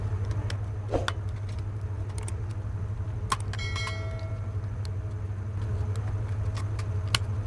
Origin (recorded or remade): recorded